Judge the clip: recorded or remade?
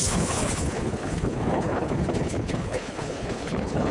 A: remade